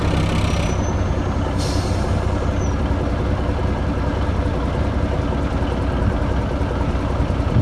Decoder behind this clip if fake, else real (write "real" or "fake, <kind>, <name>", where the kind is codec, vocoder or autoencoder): real